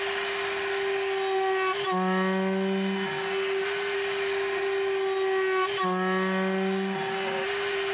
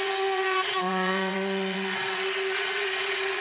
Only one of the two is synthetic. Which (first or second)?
second